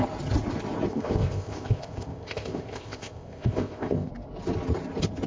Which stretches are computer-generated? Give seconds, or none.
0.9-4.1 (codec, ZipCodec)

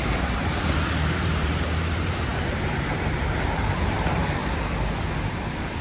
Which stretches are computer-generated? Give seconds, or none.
0.0-4.4 (vocoder, BigVGAN v2)

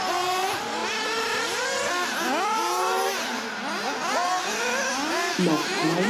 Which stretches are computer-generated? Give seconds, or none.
none

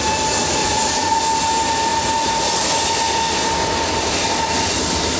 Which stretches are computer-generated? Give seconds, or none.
0.6-1.2 (vocoder, Vocos)

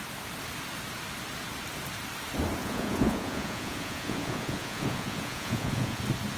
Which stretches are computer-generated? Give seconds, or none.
2.6-6.0 (vocoder, Vocos)